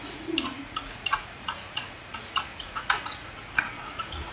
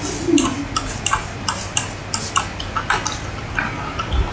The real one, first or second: second